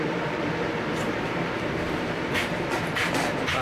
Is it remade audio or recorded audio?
remade